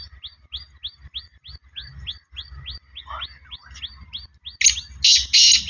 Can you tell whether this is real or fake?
real